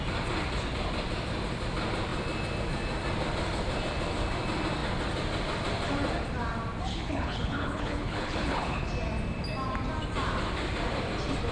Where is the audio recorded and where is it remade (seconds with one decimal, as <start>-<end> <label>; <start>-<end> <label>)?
0.0-6.9 recorded; 6.9-8.9 remade; 8.9-11.5 recorded